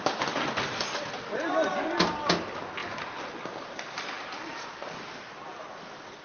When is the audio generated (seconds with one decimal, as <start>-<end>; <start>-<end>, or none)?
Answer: none